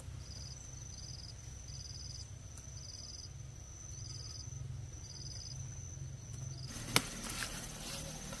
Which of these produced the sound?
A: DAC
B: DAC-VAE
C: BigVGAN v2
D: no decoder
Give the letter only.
D